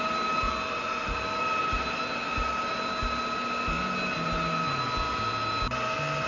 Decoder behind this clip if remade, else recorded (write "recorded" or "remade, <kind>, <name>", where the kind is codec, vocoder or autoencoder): recorded